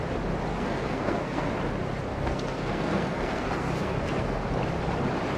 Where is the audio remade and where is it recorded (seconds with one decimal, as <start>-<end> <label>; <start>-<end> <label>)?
0.0-0.5 recorded; 0.5-1.5 remade; 1.5-2.1 recorded; 2.1-4.5 remade; 4.5-5.4 recorded